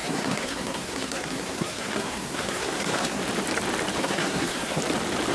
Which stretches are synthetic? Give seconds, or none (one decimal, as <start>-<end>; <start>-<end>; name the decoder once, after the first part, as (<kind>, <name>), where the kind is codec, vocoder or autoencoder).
0.0-3.2 (codec, SNAC); 4.0-4.8